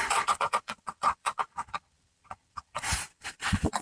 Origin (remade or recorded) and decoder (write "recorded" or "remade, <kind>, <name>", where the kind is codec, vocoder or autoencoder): remade, vocoder, Vocos